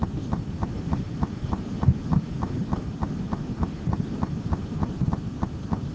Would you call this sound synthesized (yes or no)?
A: no